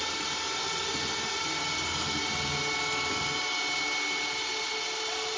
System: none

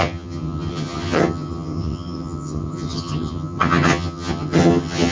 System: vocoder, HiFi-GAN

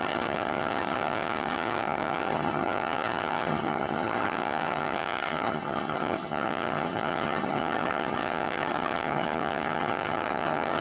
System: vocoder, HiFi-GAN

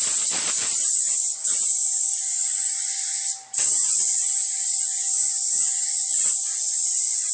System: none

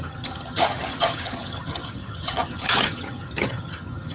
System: vocoder, HiFi-GAN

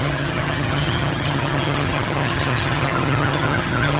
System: vocoder, HiFi-GAN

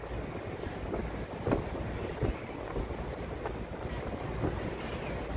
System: none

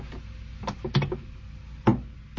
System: none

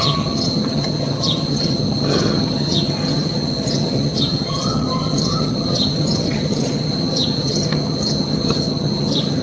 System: vocoder, HiFi-GAN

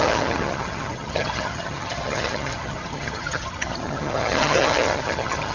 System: vocoder, HiFi-GAN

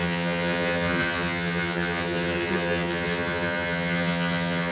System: vocoder, HiFi-GAN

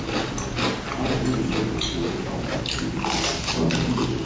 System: none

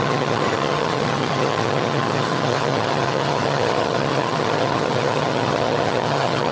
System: vocoder, HiFi-GAN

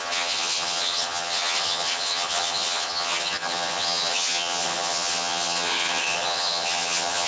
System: vocoder, HiFi-GAN